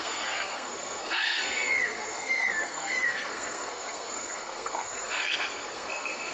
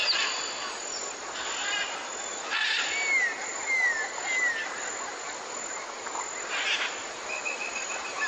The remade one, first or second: first